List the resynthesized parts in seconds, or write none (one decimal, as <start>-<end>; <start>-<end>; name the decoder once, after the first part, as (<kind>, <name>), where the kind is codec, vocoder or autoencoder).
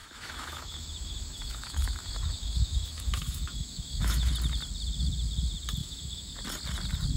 0.0-4.3 (autoencoder, DAC-VAE); 5.8-6.4